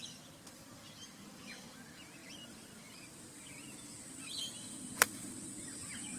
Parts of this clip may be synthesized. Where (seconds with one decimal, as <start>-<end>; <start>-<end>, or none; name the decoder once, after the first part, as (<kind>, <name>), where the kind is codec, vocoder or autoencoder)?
0.0-6.2 (vocoder, BigVGAN v2)